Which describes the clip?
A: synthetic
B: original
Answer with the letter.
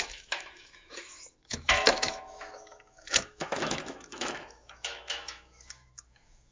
A